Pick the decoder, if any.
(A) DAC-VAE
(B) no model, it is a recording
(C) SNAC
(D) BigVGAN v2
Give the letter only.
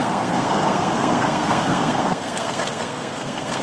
C